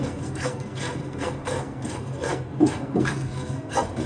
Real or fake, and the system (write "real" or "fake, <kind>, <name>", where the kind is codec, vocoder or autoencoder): fake, codec, SNAC